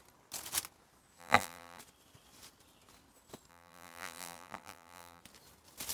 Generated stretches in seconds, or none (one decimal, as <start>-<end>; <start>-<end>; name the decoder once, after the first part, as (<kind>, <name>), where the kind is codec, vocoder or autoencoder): 1.2-1.8 (vocoder, BigVGAN v2); 3.5-5.2